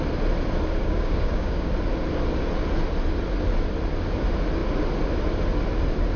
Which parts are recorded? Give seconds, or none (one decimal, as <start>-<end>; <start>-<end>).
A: 0.0-0.8; 1.7-6.2